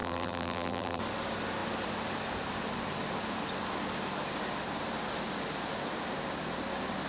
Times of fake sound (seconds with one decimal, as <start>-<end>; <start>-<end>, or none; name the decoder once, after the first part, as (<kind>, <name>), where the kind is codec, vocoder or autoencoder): 0.0-1.0 (vocoder, BigVGAN v2)